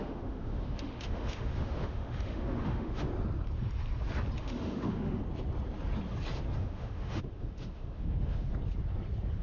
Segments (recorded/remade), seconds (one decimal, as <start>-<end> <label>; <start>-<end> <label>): 0.0-3.1 remade; 3.1-4.4 recorded; 4.4-5.2 remade; 5.2-6.6 recorded; 6.6-8.5 remade; 8.5-9.4 recorded